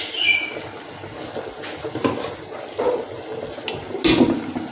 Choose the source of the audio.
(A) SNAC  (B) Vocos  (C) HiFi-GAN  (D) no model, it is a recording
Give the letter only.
D